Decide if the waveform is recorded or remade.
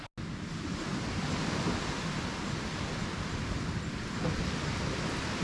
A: recorded